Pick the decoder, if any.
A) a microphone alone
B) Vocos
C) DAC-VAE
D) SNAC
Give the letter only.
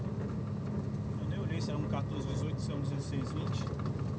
A